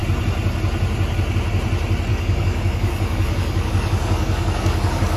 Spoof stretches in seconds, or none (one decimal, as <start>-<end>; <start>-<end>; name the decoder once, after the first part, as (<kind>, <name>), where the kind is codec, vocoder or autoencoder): 2.1-5.2 (codec, DAC)